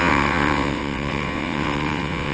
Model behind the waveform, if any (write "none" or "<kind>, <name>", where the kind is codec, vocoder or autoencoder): vocoder, WaveNeXt